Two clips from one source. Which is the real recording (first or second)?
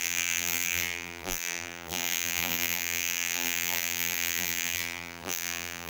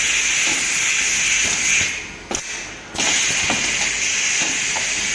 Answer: second